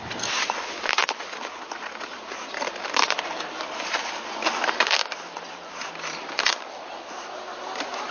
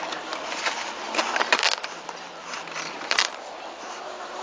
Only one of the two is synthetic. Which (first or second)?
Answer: second